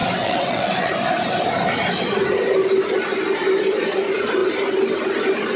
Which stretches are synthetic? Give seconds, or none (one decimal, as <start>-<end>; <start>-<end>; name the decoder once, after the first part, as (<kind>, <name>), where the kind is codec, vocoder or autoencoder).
0.0-0.9 (vocoder, WaveNeXt)

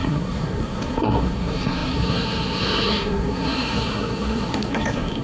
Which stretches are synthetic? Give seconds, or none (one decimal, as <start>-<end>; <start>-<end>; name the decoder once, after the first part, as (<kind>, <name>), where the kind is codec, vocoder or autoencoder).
0.0-5.2 (codec, SNAC)

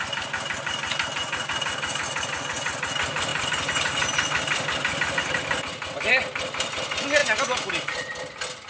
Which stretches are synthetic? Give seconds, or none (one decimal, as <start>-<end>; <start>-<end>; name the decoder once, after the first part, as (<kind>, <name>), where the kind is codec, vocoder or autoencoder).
none